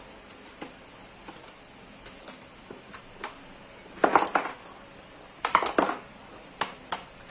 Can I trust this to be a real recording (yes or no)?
yes